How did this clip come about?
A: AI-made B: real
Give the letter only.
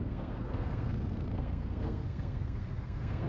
A